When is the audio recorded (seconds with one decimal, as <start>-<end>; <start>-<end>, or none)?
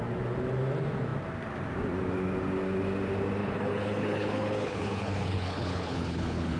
0.0-3.4